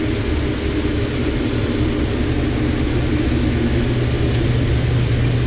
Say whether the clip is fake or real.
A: real